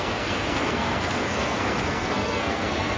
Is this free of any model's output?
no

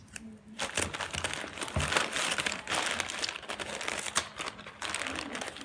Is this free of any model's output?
yes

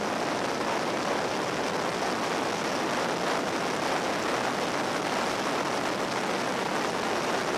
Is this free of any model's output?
yes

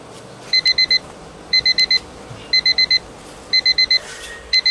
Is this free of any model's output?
yes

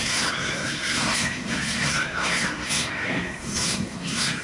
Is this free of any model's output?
no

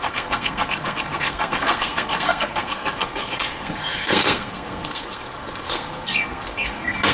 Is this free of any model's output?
no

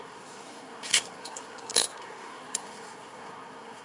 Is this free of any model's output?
no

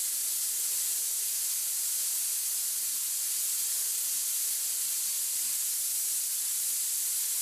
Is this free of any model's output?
yes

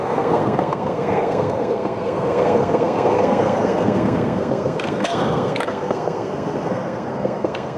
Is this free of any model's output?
no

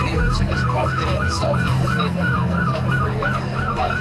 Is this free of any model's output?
no